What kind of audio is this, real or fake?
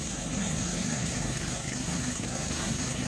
fake